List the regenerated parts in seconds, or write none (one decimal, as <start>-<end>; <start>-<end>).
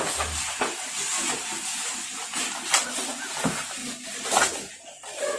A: 1.7-3.4; 3.8-4.7